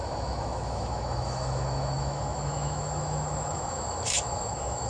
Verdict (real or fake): fake